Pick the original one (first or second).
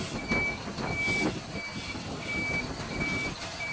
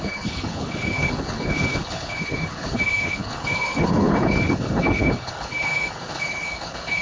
first